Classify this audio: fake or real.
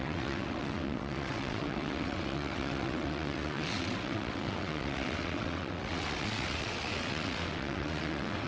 fake